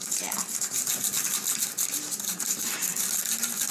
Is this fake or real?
real